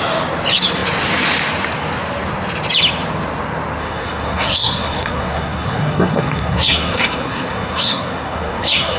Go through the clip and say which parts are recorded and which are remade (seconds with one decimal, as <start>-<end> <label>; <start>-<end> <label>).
0.0-3.8 recorded; 3.8-9.0 remade